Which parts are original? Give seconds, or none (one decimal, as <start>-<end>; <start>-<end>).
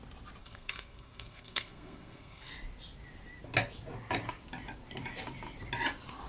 0.0-0.4; 2.5-6.3